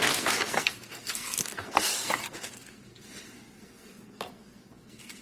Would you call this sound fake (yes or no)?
yes